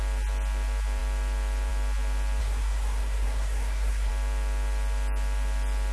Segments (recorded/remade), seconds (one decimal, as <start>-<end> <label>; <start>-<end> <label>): 0.0-2.4 recorded; 2.4-4.1 remade; 4.1-5.9 recorded